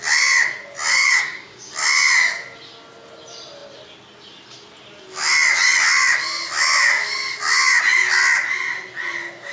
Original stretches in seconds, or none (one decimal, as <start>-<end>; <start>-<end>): 0.0-0.9; 1.7-9.5